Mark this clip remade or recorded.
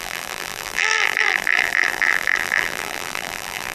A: remade